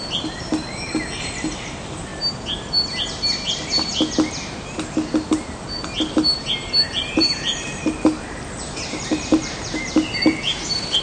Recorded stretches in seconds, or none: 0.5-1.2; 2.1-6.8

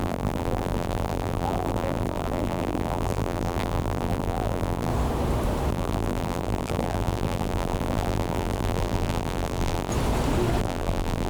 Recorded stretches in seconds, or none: 4.9-5.7; 9.9-10.6

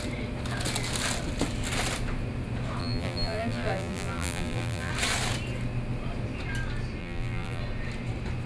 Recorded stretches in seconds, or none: 0.0-2.8; 4.9-7.0; 7.6-8.5

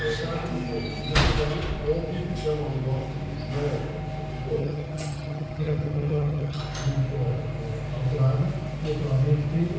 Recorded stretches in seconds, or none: 0.0-4.6; 6.6-9.8

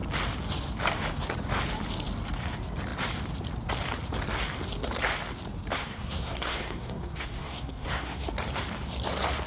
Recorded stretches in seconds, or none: 0.0-5.8; 8.2-9.5

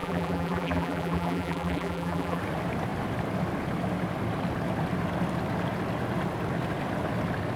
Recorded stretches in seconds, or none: 2.4-7.6

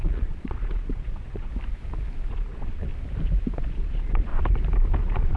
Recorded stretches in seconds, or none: 1.5-2.3; 2.9-3.7; 4.3-5.0

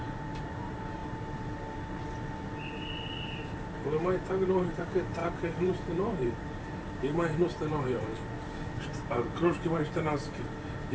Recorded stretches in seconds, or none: 1.0-3.1; 8.1-8.8